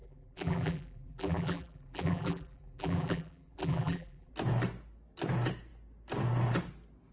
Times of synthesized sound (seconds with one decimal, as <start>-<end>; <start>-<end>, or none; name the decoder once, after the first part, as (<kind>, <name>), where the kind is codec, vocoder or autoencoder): 0.0-4.3 (vocoder, BigVGAN v2)

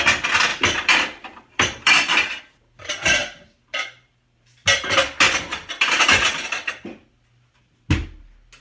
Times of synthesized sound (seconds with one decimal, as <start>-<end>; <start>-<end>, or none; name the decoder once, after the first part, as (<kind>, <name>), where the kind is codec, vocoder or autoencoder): 0.5-2.4 (vocoder, BigVGAN v2)

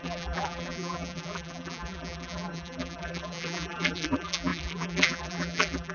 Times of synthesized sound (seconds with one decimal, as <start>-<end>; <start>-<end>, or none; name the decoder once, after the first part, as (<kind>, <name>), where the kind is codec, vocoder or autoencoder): 0.0-5.9 (vocoder, BigVGAN v2)

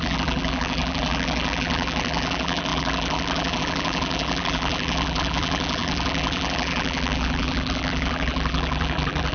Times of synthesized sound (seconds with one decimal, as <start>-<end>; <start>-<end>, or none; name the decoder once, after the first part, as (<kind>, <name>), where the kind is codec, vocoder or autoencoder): 0.0-9.3 (vocoder, BigVGAN v2)

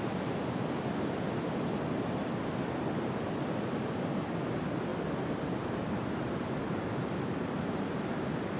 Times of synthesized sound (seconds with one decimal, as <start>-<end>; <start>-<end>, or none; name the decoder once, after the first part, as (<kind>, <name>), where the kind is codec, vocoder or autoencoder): none